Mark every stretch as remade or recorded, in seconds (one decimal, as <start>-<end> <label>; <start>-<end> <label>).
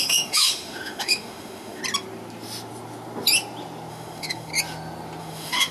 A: 0.0-1.8 remade; 1.8-3.9 recorded; 3.9-4.5 remade; 4.5-5.2 recorded; 5.2-5.7 remade